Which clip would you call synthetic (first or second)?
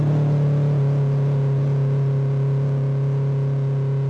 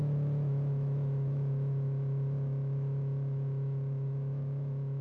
second